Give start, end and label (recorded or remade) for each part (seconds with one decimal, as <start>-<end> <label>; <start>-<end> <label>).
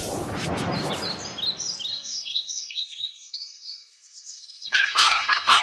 0.0-1.9 recorded; 1.9-5.6 remade